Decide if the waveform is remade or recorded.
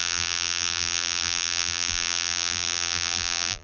remade